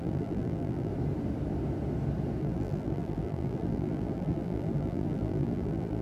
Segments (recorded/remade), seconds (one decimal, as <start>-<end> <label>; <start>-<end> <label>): 0.0-0.9 remade; 0.9-2.4 recorded; 2.4-6.0 remade

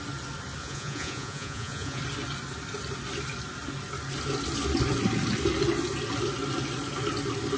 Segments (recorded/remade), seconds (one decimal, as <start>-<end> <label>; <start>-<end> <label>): 0.0-0.6 recorded; 0.6-2.0 remade; 2.0-7.6 recorded

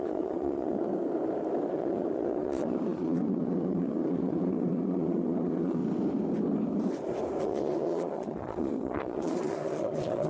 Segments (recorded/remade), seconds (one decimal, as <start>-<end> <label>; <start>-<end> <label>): 0.0-0.9 remade; 0.9-1.7 recorded; 1.7-5.8 remade; 5.8-7.4 recorded; 7.4-10.3 remade

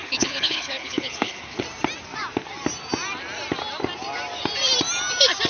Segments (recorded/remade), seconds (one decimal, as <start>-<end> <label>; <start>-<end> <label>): 0.0-1.6 remade; 1.6-5.5 recorded